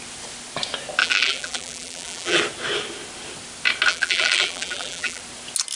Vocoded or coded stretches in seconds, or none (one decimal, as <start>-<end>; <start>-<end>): 1.0-2.4; 3.9-5.2